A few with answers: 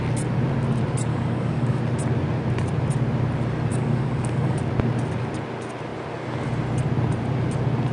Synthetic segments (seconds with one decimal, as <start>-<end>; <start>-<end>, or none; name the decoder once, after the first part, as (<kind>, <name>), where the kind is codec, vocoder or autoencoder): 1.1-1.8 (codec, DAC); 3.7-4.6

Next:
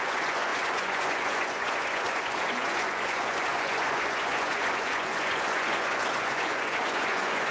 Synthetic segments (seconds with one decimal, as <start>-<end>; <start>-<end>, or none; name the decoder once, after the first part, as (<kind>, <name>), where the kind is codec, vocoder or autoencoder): 0.0-7.5 (vocoder, Vocos)

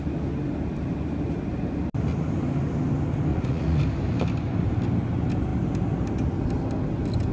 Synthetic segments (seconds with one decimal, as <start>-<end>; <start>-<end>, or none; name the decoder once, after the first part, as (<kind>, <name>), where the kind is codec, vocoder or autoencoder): 3.3-3.8 (vocoder, Vocos)